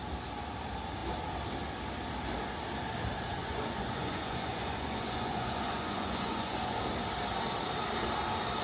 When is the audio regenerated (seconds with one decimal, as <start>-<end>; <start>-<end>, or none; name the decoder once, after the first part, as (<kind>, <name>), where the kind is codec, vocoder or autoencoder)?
3.4-6.8 (vocoder, Vocos)